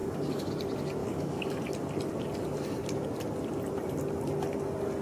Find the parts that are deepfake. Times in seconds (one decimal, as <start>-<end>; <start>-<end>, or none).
0.0-0.5; 1.0-1.6